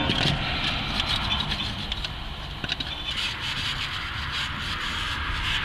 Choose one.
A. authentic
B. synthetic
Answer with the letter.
A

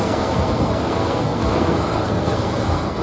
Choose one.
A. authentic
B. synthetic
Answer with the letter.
B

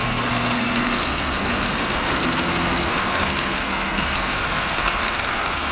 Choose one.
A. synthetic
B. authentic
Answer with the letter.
A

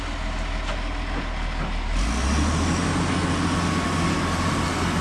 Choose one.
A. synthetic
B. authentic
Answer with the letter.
B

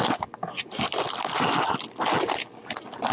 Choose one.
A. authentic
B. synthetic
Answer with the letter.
A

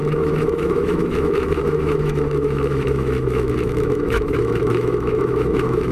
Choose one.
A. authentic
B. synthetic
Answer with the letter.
B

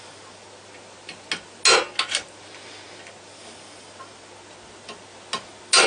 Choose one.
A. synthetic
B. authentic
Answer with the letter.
B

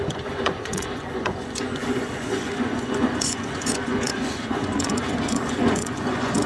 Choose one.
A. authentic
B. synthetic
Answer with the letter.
B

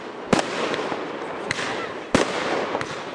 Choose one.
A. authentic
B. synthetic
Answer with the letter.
A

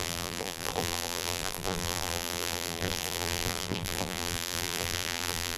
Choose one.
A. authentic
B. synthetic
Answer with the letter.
B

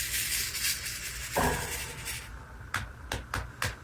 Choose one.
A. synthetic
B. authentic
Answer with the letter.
B